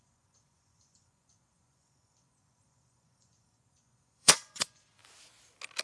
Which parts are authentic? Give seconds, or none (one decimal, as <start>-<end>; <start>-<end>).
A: 5.0-5.8